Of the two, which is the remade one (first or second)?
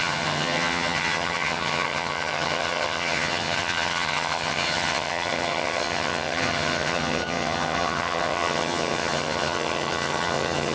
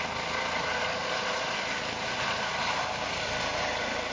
first